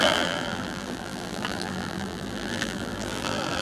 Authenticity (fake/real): fake